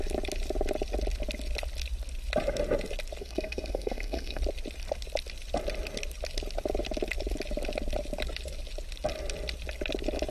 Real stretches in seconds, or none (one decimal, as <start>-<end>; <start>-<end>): 0.0-3.2; 4.4-10.3